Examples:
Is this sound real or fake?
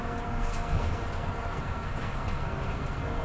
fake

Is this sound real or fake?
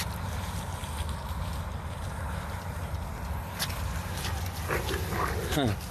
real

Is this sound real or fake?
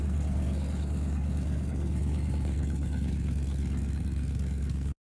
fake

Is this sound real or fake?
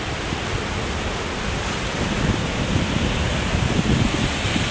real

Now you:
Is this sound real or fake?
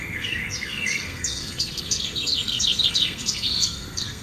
fake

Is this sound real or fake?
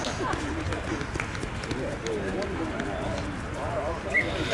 real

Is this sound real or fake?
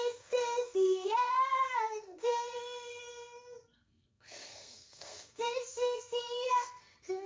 fake